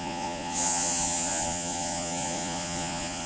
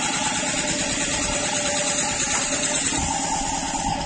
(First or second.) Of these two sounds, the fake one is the first